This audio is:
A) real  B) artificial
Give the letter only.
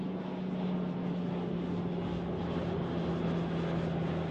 A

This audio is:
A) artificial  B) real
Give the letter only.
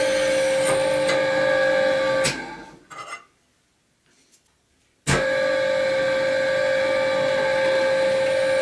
B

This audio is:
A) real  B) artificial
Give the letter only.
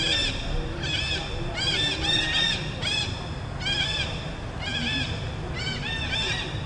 A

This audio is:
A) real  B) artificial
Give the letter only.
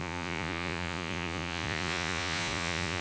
B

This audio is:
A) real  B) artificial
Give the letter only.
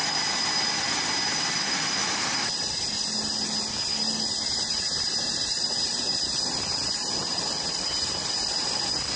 A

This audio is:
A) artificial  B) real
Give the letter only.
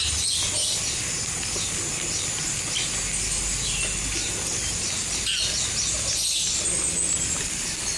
B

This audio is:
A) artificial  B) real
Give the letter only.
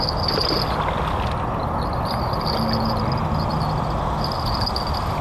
B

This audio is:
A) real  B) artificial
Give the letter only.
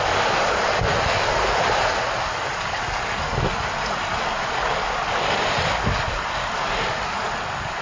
A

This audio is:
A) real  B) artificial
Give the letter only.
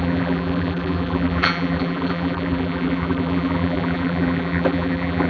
B